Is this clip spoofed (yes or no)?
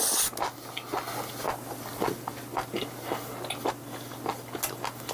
no